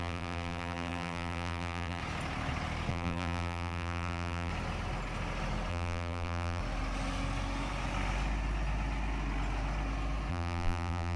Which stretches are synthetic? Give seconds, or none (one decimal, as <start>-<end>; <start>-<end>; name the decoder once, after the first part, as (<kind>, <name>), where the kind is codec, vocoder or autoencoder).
0.0-2.0 (vocoder, BigVGAN v2); 2.9-4.5; 5.7-6.6; 10.3-11.2

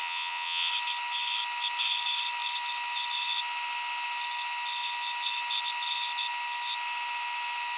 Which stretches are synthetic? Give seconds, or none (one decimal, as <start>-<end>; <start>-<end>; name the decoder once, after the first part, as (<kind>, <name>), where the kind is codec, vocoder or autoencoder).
0.0-0.7 (vocoder, Vocos)

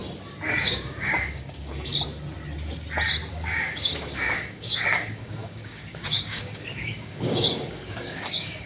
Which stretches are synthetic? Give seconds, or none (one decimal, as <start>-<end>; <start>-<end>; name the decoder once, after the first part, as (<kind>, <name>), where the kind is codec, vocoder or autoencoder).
0.5-1.9 (codec, DAC); 3.3-8.7

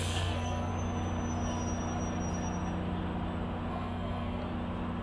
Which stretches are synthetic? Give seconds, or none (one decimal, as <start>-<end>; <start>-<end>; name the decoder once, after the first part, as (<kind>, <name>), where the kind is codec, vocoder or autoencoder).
0.0-0.7 (codec, SNAC); 3.7-4.4

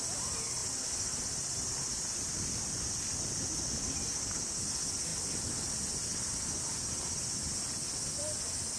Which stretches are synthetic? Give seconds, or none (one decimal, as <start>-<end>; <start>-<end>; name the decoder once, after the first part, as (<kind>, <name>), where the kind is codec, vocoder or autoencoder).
0.6-2.6 (vocoder, BigVGAN v2)